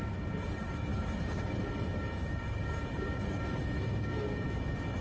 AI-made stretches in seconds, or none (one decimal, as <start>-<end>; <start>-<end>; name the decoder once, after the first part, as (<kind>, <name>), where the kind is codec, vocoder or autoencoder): none